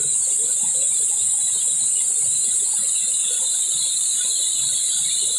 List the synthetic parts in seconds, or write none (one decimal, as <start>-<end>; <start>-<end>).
none